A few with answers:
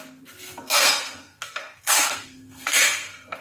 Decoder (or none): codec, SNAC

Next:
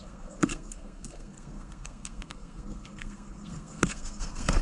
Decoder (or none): codec, SNAC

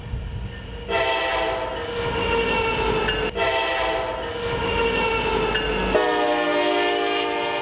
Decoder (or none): none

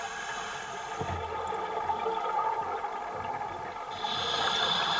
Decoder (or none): none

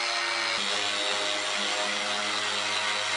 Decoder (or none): none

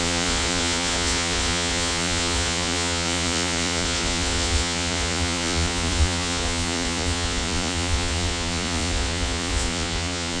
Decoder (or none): vocoder, Vocos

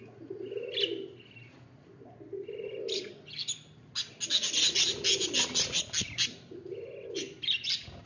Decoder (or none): none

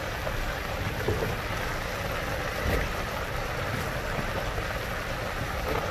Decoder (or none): none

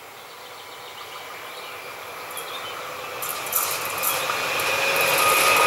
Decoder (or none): none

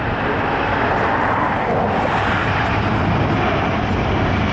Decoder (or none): none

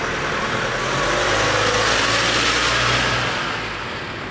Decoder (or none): none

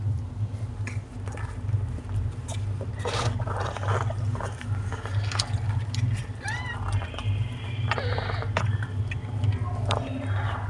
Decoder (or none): none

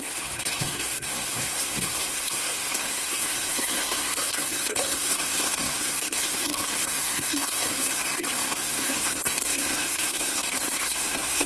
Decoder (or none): codec, SNAC